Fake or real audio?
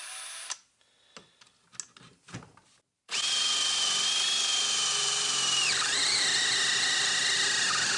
real